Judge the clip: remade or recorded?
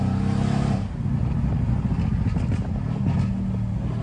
recorded